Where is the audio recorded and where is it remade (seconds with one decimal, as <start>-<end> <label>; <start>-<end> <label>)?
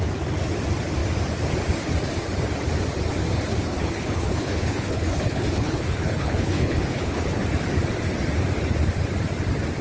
0.0-3.5 recorded; 3.5-7.4 remade; 7.4-9.8 recorded